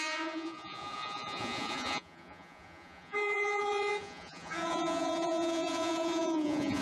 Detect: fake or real fake